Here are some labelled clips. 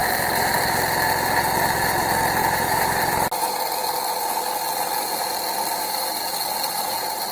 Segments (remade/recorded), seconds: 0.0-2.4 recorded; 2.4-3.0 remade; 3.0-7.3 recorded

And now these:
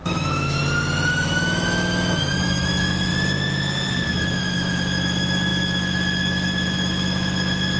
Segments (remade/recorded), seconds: 0.0-0.6 remade; 0.6-1.1 recorded; 1.1-3.1 remade; 3.1-4.1 recorded; 4.1-7.8 remade